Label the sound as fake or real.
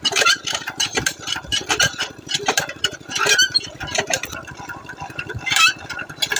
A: fake